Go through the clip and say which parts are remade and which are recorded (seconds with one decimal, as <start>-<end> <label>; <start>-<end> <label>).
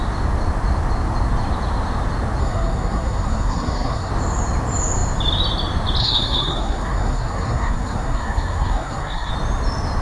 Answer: 0.0-2.4 recorded; 2.4-4.1 remade; 4.1-6.0 recorded; 6.0-9.3 remade; 9.3-10.0 recorded